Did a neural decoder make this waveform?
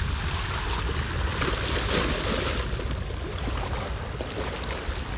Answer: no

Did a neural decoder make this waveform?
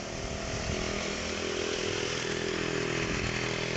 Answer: no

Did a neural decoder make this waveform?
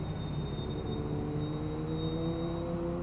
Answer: no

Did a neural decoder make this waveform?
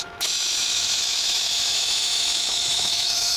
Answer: yes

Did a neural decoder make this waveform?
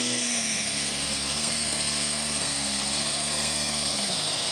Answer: yes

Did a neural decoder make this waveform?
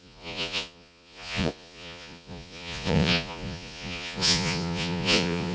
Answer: yes